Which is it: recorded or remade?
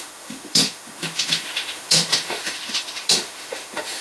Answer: remade